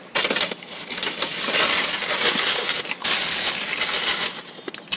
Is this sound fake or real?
real